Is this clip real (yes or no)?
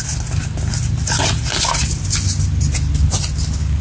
yes